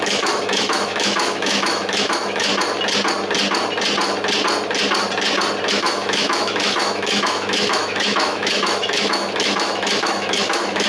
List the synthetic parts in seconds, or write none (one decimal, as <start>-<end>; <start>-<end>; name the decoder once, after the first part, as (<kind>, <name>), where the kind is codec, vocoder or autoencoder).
0.0-2.5 (autoencoder, DAC-VAE); 5.7-10.9